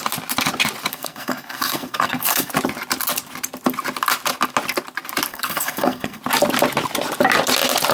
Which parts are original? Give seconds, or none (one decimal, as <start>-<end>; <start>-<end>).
0.0-0.9; 2.5-5.3; 6.2-7.9